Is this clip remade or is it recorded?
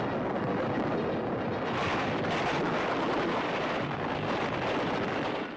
recorded